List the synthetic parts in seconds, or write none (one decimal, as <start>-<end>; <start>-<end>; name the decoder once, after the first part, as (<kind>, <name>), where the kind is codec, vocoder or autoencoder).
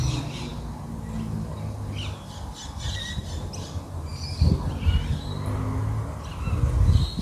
none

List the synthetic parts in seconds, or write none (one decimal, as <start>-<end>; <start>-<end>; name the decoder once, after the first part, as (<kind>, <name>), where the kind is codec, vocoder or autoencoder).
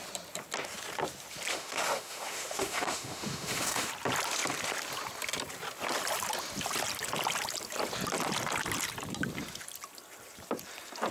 1.5-3.9 (autoencoder, DAC-VAE)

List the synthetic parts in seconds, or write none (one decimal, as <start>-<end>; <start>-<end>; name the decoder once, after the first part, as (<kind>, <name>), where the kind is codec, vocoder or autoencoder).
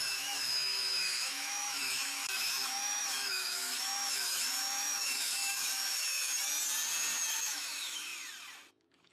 0.0-6.3 (autoencoder, DAC-VAE); 7.3-8.1; 8.7-9.1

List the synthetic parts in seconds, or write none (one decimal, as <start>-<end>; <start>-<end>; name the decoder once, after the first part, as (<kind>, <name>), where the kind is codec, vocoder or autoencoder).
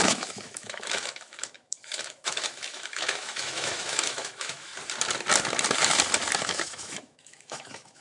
0.0-4.7 (autoencoder, DAC-VAE); 6.4-8.0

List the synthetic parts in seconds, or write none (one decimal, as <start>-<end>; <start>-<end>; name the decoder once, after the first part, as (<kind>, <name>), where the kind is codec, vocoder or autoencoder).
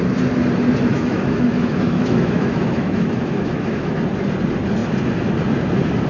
0.9-4.0 (autoencoder, DAC-VAE)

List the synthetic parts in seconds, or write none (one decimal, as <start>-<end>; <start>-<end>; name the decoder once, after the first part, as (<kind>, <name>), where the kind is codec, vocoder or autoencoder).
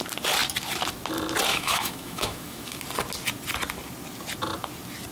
1.5-2.8 (autoencoder, DAC-VAE)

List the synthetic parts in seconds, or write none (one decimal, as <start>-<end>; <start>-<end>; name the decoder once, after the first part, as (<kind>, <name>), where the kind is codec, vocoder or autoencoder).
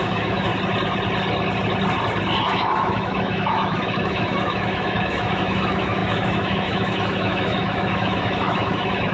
0.0-0.5 (autoencoder, DAC-VAE); 2.4-9.1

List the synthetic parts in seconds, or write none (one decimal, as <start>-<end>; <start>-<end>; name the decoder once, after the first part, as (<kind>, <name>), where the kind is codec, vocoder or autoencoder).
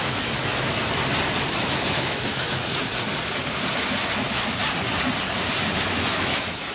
0.0-0.5 (autoencoder, DAC-VAE); 1.4-2.7; 4.1-4.6; 5.7-6.7